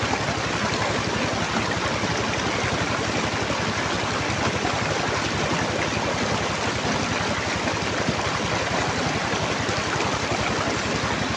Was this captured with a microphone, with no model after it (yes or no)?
yes